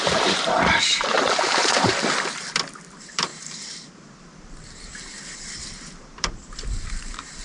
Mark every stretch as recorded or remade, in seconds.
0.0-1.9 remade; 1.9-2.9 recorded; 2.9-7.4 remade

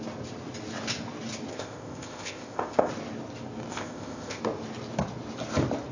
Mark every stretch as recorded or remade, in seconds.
0.0-1.5 recorded; 1.5-2.9 remade; 2.9-3.7 recorded; 3.7-4.4 remade; 4.4-5.9 recorded

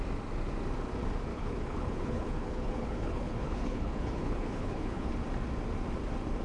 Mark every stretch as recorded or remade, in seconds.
0.0-1.3 recorded; 1.3-5.1 remade; 5.1-6.4 recorded

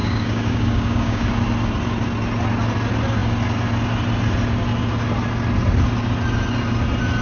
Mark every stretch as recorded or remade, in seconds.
0.0-1.3 remade; 1.3-7.2 recorded

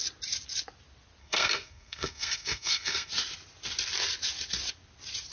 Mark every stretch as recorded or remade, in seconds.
0.0-1.2 recorded; 1.2-3.1 remade; 3.1-5.3 recorded

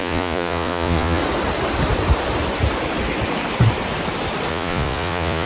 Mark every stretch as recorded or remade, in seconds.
0.0-1.2 remade; 1.2-4.5 recorded; 4.5-5.5 remade

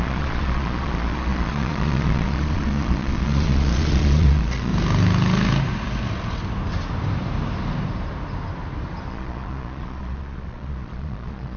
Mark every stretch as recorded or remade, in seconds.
0.0-4.7 remade; 4.7-9.1 recorded; 9.1-11.6 remade